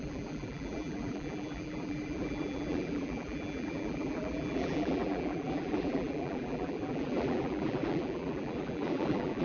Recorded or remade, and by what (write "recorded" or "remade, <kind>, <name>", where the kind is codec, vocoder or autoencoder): remade, vocoder, BigVGAN v2